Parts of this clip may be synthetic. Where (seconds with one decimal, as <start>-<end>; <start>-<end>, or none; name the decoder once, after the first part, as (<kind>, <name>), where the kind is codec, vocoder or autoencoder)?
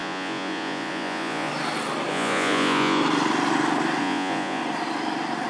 0.0-1.5 (vocoder, Vocos); 2.1-3.0; 4.0-4.6